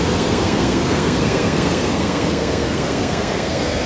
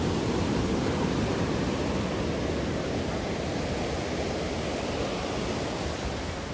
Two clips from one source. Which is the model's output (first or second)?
first